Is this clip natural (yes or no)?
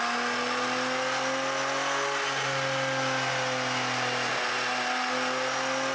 yes